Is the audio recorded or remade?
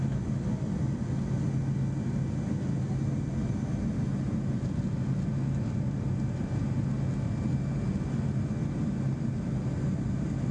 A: recorded